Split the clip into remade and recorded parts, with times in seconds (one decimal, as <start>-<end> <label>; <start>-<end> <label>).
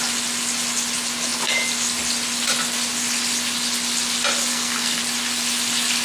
0.0-4.5 recorded; 4.5-5.0 remade; 5.0-6.0 recorded